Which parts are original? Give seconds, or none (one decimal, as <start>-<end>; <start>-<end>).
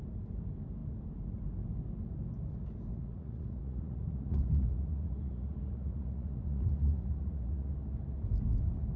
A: 0.0-2.9; 7.7-9.0